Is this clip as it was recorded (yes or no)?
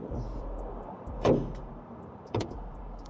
no